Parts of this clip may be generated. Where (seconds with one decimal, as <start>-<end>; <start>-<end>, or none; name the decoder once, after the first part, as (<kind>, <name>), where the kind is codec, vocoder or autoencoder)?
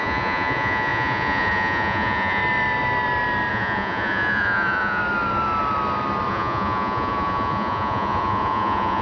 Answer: 0.0-2.4 (vocoder, Vocos); 3.5-5.0; 6.3-9.0